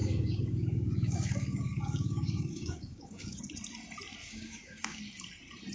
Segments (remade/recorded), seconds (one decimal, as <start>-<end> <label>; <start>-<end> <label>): 0.0-3.4 remade; 3.4-4.2 recorded; 4.2-5.0 remade; 5.0-5.7 recorded